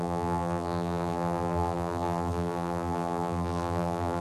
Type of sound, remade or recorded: remade